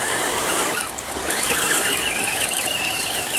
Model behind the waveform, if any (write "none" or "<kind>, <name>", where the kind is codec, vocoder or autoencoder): codec, DAC